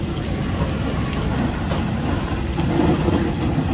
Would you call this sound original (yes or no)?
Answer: yes